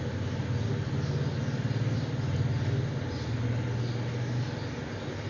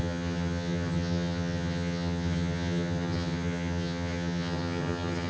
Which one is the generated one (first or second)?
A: second